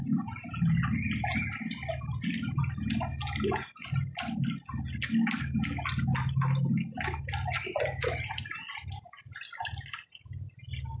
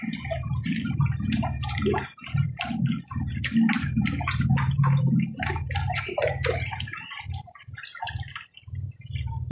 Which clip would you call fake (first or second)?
second